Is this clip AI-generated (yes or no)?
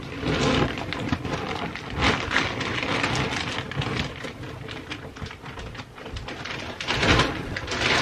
no